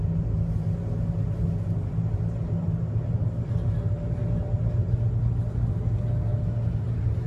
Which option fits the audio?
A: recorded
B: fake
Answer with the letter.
A